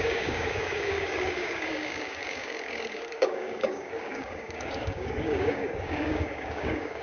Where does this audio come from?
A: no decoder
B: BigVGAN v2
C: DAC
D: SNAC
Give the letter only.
C